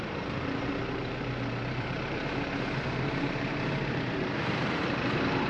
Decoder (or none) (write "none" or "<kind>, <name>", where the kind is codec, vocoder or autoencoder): vocoder, BigVGAN v2